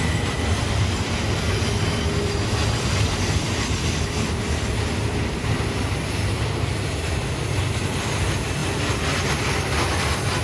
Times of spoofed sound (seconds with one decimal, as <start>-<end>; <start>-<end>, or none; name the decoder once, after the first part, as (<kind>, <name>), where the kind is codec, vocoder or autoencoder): none